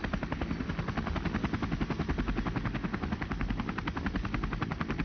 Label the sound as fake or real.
real